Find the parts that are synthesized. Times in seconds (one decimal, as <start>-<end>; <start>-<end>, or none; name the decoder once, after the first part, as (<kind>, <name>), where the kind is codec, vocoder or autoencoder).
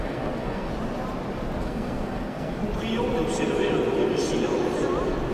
0.0-0.7 (codec, SNAC); 1.6-2.6